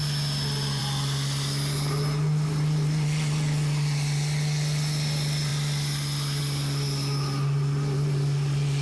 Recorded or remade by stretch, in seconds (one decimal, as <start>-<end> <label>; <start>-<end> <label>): 0.0-8.8 recorded